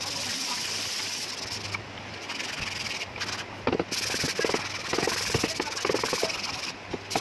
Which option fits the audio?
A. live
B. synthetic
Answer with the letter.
A